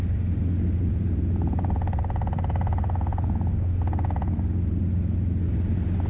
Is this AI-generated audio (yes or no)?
no